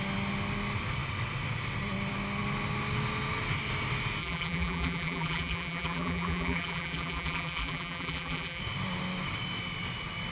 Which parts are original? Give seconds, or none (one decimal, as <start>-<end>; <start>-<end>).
0.0-4.2; 8.6-10.3